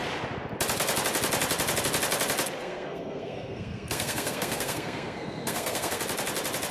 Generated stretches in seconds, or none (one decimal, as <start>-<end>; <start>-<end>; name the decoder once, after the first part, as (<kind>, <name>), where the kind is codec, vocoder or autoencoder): 2.6-6.0 (codec, SNAC)